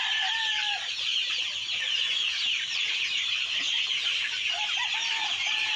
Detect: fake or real fake